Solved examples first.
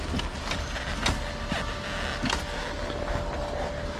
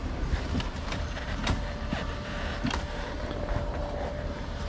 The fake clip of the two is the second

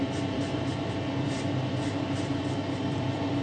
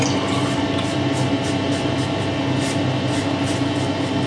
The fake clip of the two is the first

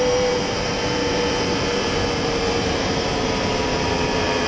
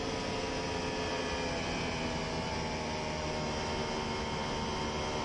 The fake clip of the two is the first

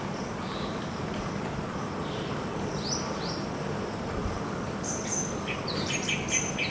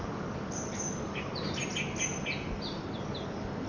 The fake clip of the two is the first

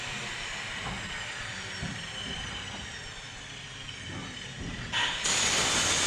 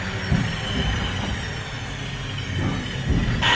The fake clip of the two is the first